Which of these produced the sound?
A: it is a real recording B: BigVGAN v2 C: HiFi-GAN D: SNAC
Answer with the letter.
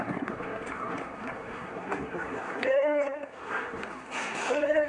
D